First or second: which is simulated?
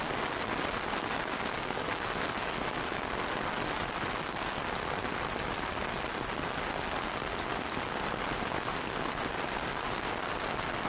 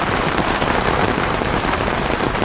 second